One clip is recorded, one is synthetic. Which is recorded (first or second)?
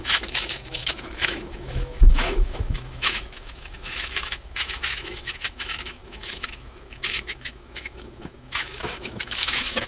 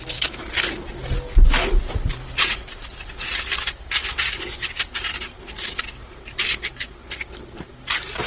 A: second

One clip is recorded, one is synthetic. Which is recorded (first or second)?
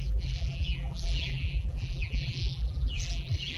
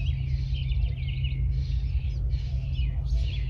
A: second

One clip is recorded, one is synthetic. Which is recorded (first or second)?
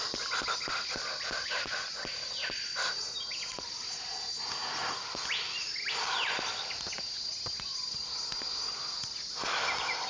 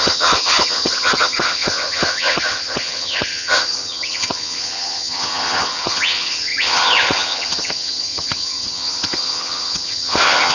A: first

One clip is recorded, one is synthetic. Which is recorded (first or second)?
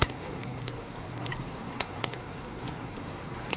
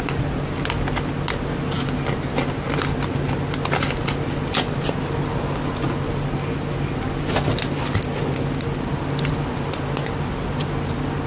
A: second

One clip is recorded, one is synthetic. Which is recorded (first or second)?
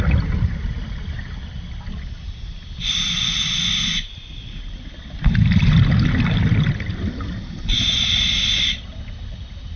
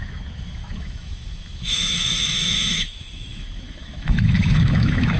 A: first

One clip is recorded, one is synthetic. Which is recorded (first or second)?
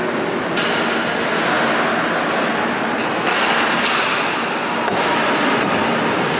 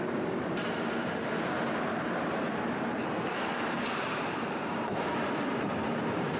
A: first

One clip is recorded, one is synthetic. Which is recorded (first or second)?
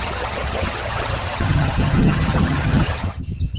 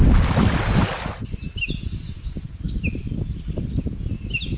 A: second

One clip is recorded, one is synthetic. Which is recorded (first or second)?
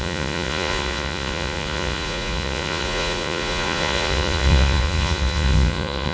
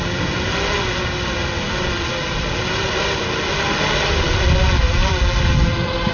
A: second